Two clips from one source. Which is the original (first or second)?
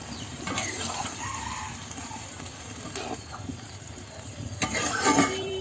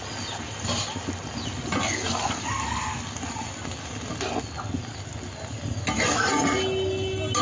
second